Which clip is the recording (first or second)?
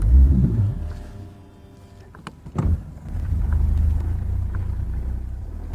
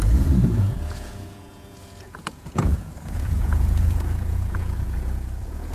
first